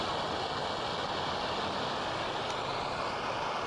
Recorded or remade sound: recorded